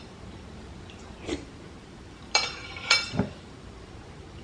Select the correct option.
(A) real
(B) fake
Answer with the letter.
B